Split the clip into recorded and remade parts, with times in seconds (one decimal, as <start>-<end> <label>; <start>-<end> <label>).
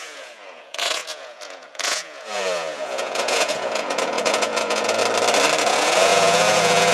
0.0-5.0 remade; 5.0-5.6 recorded; 5.6-6.9 remade